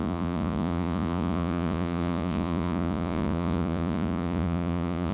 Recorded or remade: remade